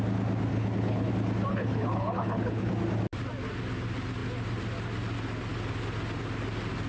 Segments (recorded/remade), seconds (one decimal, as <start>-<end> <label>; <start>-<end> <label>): 0.0-0.5 recorded; 0.5-1.1 remade; 1.1-1.5 recorded; 1.5-2.7 remade; 2.7-6.9 recorded